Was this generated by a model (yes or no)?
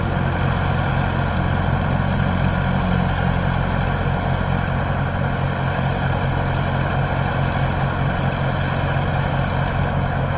no